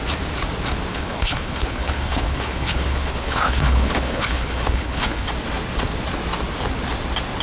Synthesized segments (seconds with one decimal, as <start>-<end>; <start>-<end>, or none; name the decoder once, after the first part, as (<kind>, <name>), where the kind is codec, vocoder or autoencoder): 0.9-5.3 (codec, HILCodec)